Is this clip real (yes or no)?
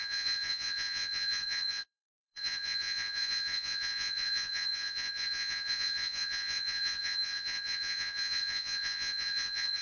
no